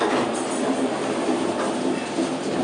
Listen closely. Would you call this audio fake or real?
fake